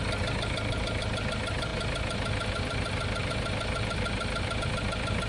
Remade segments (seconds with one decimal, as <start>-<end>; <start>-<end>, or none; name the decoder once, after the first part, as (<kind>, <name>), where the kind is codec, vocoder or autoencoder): none